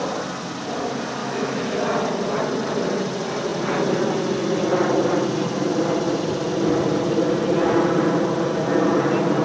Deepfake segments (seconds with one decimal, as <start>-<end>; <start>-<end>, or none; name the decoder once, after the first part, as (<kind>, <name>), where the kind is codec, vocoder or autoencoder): 1.2-1.8 (autoencoder, DAC-VAE)